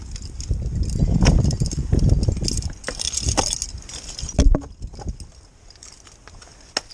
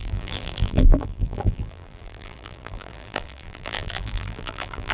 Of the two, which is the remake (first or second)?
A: second